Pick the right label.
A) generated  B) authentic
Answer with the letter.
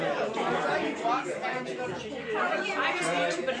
B